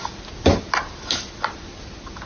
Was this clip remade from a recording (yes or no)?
no